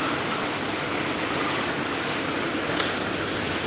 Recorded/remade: recorded